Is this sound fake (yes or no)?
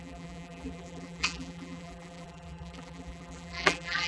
yes